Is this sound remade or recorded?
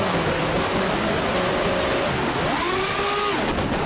recorded